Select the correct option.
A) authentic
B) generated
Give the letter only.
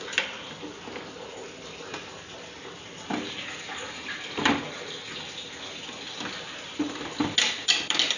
A